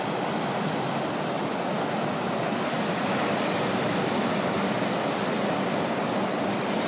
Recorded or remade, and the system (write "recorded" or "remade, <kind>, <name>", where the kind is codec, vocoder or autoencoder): recorded